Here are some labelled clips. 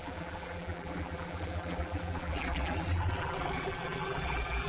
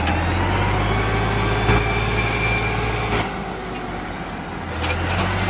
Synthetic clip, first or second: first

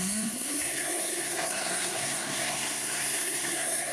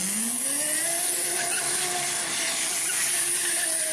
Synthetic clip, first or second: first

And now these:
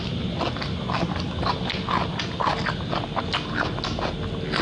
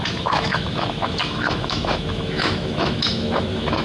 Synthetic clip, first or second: second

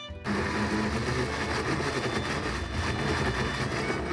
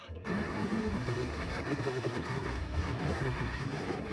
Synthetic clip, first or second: second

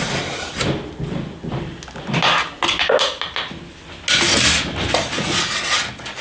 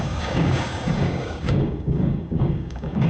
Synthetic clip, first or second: second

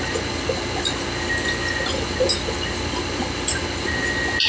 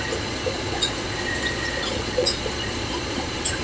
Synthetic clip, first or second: second